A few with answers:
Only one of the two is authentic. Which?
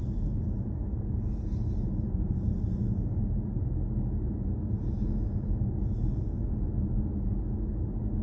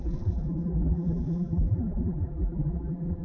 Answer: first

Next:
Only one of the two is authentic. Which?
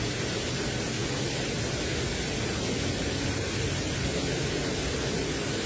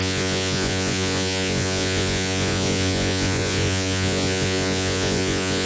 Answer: first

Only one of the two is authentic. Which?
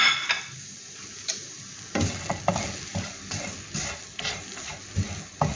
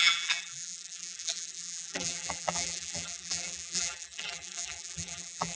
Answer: first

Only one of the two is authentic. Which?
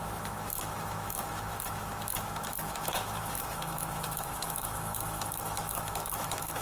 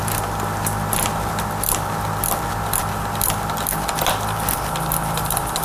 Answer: second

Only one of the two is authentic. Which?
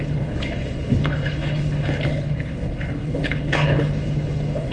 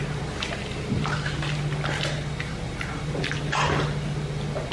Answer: second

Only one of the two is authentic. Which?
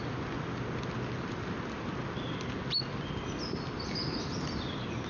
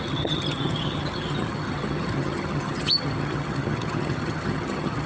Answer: first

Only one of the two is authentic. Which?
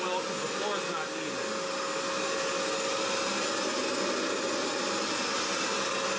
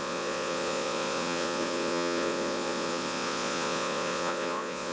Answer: first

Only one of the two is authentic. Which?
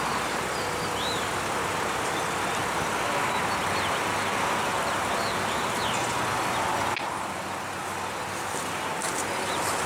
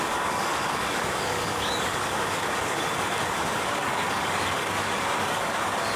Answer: first